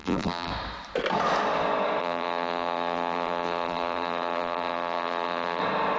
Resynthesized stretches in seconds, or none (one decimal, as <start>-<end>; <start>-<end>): 0.0-0.5; 2.0-5.6